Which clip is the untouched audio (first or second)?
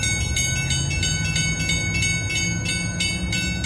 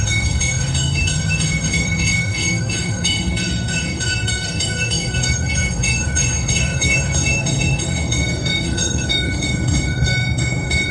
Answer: first